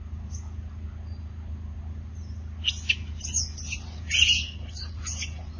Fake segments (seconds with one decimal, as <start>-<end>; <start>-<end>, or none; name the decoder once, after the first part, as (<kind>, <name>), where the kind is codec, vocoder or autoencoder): none